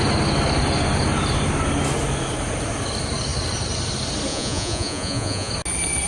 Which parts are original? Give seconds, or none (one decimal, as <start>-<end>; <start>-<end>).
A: 0.0-4.3; 5.5-6.1